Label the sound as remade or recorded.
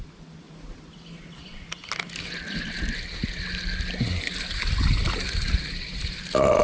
recorded